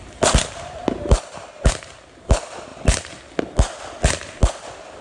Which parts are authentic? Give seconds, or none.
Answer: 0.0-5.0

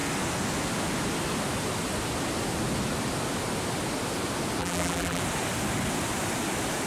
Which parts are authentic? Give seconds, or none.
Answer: 0.0-4.6; 5.2-6.9

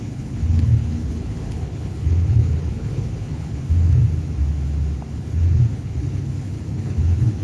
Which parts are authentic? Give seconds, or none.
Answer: 4.0-5.1

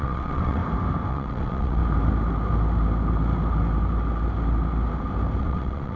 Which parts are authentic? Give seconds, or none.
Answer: 0.6-1.1; 1.8-5.4

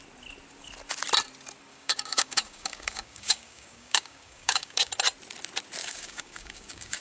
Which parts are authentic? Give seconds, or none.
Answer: 0.0-1.7; 4.9-5.8